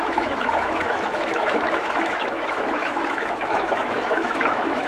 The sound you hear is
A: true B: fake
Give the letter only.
B